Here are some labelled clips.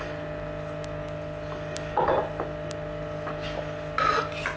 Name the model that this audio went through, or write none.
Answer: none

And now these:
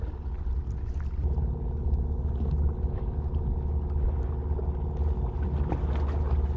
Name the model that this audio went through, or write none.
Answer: none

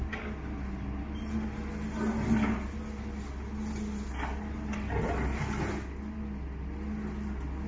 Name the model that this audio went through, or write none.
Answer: none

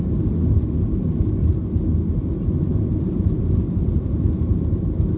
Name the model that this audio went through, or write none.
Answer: none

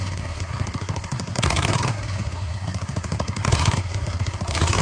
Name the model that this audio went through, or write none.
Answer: codec, SNAC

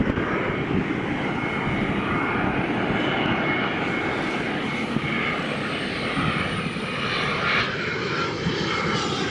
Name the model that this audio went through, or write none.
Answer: none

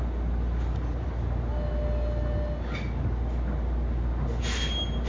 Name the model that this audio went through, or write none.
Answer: none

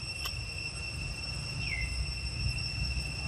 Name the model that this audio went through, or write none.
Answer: none